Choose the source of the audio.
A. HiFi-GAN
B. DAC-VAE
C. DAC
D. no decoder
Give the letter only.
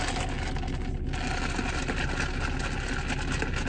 D